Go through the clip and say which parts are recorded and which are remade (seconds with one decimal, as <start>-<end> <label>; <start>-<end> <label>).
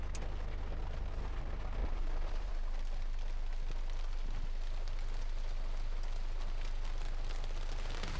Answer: 0.0-1.8 recorded; 1.8-2.5 remade; 2.5-8.2 recorded